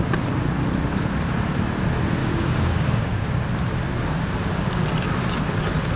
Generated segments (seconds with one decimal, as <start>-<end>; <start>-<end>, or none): 2.2-3.3